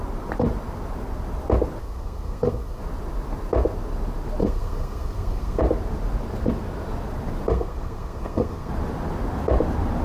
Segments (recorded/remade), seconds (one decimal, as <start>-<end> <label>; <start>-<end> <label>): 0.0-1.8 recorded; 1.8-2.8 remade; 2.8-4.4 recorded; 4.4-5.6 remade; 5.6-7.5 recorded; 7.5-8.7 remade; 8.7-10.0 recorded